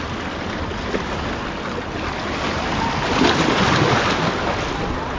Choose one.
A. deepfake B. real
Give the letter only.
B